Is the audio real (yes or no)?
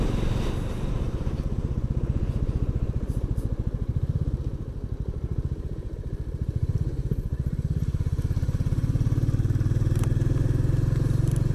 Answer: no